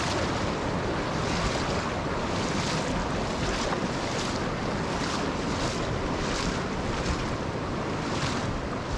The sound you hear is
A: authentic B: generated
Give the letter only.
A